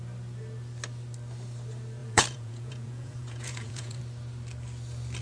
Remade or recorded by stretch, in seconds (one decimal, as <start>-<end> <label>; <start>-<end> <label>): 0.0-2.0 recorded; 2.0-4.0 remade; 4.0-5.2 recorded